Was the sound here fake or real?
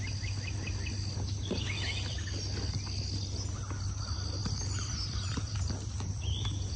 real